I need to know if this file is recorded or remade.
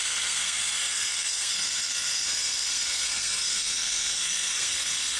remade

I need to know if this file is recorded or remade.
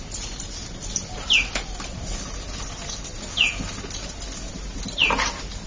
recorded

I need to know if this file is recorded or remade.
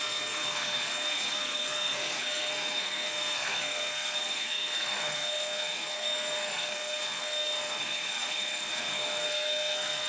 remade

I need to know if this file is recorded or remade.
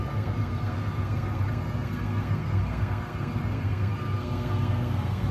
remade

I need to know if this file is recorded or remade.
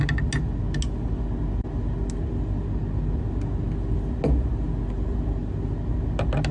recorded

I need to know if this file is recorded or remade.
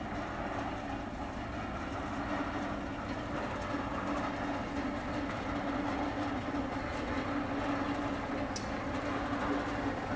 recorded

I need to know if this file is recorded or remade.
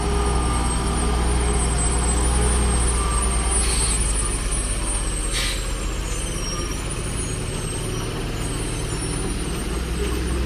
recorded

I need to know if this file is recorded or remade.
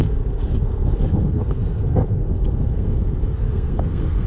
remade